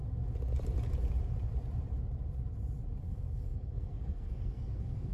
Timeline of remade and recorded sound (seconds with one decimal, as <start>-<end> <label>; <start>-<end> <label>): 0.0-3.1 recorded; 3.1-5.1 remade